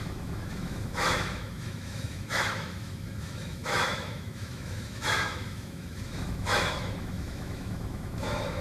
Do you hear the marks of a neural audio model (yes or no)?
yes